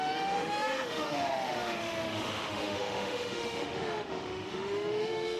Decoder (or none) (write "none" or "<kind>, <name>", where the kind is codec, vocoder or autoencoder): autoencoder, DAC-VAE